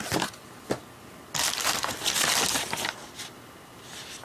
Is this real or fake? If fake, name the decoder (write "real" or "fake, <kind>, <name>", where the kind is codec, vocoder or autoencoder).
real